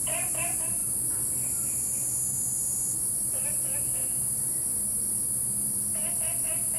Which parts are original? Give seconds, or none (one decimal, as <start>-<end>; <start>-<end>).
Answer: 0.0-6.8